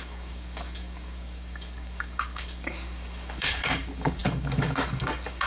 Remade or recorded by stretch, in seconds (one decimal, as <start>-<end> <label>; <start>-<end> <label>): 0.0-5.5 remade